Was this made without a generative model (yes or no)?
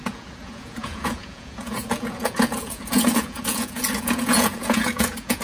no